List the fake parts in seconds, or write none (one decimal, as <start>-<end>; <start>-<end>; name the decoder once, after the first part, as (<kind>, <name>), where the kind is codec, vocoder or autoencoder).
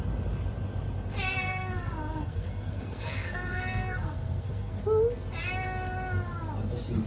1.3-4.8 (codec, SNAC)